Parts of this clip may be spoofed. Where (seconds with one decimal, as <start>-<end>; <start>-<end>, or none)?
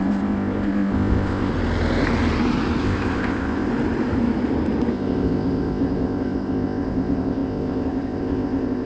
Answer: 0.0-1.5; 2.8-3.7; 4.9-8.8